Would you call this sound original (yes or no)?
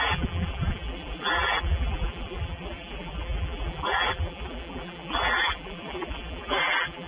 no